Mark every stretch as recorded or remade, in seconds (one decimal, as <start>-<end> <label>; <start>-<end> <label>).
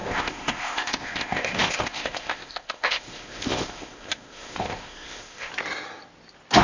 0.0-5.5 remade; 5.5-6.6 recorded